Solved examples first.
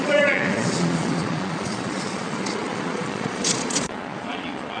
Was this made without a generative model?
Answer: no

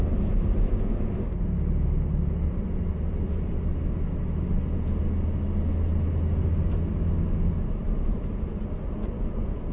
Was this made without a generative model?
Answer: yes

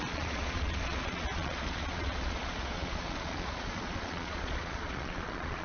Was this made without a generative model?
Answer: no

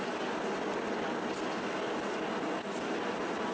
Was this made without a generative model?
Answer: yes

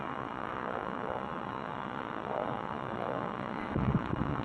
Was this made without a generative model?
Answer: no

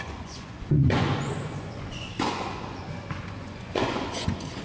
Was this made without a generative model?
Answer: no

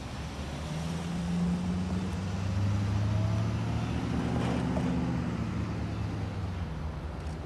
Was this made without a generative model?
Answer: yes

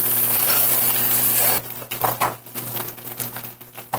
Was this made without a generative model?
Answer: yes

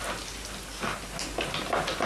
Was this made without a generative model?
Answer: yes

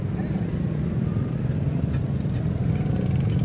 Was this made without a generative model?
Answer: yes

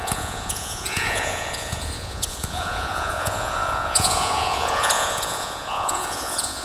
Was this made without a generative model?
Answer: no